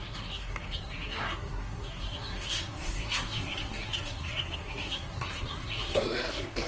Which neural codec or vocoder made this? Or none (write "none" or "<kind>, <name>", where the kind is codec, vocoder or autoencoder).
codec, SNAC